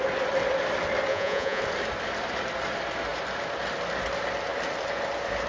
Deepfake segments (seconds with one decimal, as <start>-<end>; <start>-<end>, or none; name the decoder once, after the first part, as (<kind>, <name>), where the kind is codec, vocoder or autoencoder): 1.1-1.6 (vocoder, Vocos)